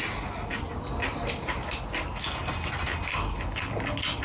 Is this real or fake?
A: real